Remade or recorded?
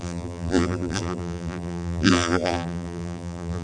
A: remade